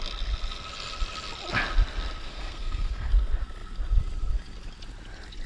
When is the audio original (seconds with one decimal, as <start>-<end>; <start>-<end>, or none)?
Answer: 0.0-2.3; 3.1-5.5